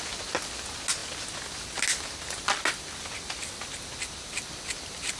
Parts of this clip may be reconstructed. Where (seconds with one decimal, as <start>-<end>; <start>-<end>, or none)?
none

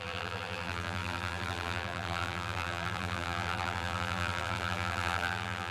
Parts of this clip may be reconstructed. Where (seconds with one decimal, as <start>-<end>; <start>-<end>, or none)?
0.0-5.7

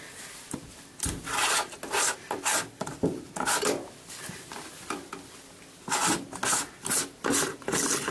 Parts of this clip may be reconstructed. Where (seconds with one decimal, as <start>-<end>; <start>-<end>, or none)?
none